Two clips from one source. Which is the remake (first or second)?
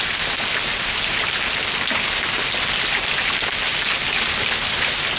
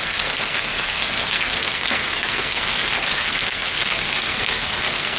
second